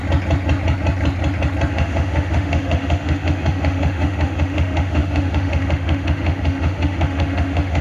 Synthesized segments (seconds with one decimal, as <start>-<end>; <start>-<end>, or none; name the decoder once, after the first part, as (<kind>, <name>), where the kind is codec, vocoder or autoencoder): 1.7-7.8 (autoencoder, DAC-VAE)